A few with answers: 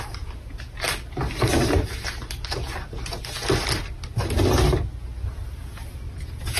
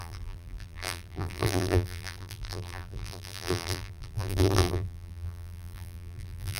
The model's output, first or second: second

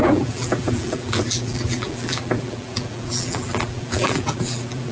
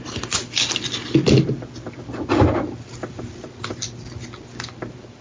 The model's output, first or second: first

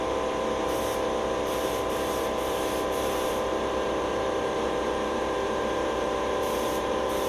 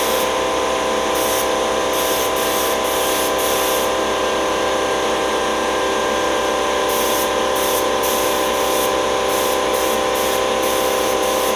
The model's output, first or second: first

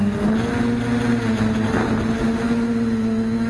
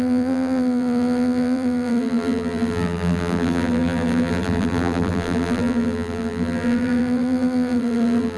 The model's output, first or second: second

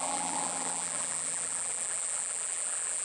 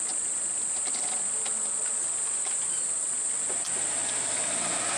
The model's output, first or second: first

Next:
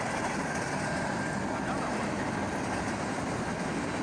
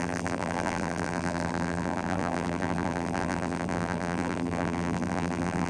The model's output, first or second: second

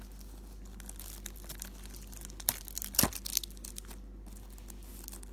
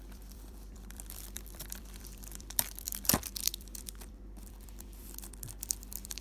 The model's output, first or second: second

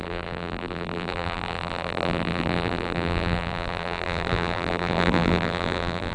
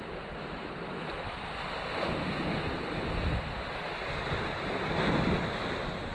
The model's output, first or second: first